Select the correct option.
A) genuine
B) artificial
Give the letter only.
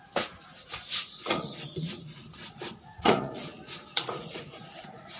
B